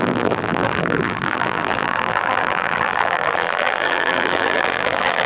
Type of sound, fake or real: fake